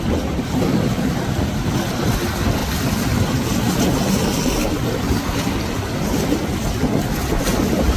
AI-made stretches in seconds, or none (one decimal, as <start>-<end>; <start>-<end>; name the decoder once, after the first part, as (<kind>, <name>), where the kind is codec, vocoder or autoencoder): none